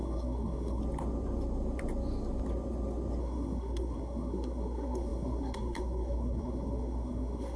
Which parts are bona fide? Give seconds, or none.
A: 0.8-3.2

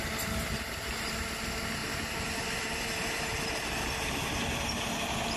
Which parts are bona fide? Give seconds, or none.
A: 0.0-1.8; 5.0-5.4

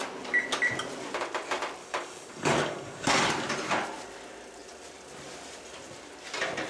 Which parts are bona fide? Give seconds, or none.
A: 0.0-1.8; 3.3-6.7